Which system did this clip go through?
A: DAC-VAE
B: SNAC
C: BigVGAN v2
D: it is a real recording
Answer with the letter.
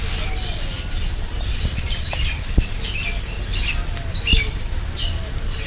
D